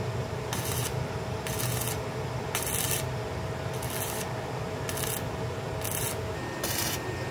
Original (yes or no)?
yes